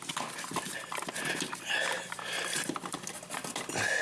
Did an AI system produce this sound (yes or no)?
no